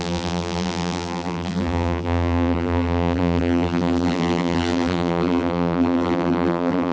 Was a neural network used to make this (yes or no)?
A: yes